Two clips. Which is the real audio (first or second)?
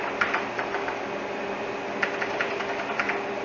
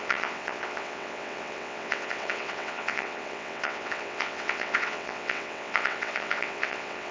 first